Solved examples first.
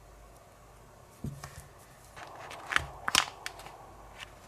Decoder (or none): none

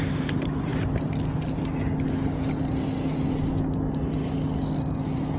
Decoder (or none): none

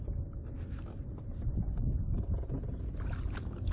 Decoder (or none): none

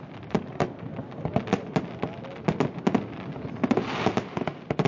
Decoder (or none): none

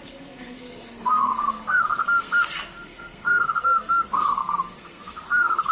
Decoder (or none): codec, SNAC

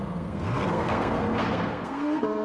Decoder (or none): codec, SNAC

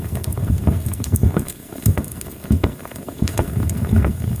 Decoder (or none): codec, SNAC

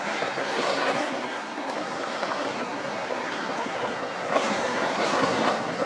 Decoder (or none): codec, SNAC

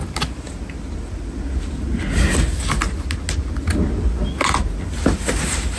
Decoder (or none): none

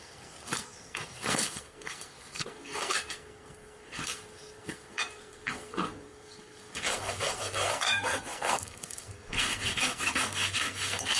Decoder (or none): codec, SNAC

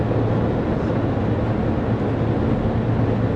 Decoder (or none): none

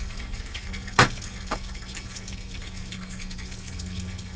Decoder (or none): codec, SNAC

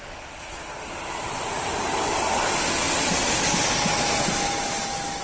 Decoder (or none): none